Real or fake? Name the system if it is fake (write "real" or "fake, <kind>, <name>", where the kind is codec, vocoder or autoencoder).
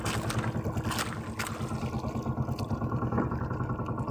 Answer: real